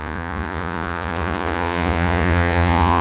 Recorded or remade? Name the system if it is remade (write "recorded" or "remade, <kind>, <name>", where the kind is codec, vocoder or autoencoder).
remade, vocoder, Vocos